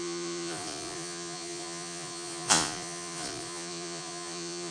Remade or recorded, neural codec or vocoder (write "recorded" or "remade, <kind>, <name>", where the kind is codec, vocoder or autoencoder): remade, vocoder, Vocos